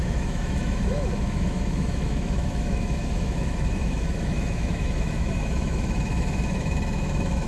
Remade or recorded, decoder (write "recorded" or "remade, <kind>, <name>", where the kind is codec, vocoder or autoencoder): remade, autoencoder, DAC-VAE